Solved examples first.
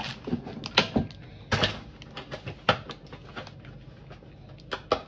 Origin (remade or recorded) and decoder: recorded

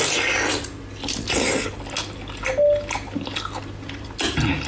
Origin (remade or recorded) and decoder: recorded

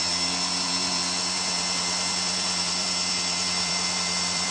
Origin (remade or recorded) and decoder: remade, vocoder, BigVGAN v2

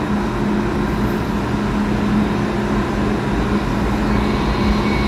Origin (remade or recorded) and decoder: recorded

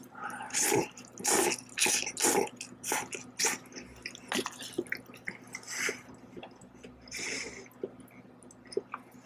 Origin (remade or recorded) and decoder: recorded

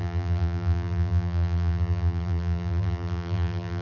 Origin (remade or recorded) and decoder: remade, vocoder, BigVGAN v2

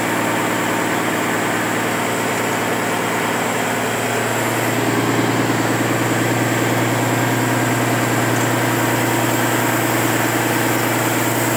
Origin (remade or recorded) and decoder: recorded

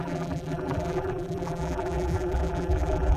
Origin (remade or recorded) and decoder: remade, vocoder, BigVGAN v2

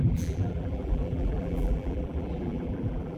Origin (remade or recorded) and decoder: remade, vocoder, BigVGAN v2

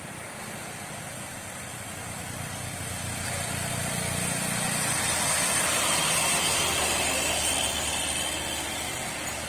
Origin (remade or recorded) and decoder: recorded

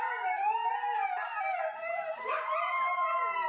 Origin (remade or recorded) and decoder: recorded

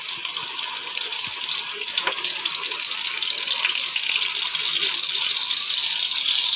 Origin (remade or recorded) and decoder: recorded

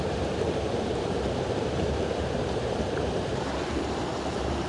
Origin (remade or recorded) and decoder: remade, vocoder, BigVGAN v2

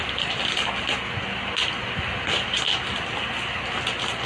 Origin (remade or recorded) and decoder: recorded